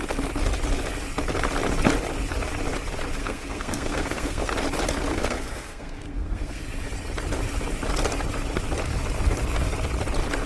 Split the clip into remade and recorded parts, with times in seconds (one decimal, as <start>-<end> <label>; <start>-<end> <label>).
0.0-3.2 recorded; 3.2-4.5 remade; 4.5-5.1 recorded; 5.1-6.6 remade; 6.6-10.5 recorded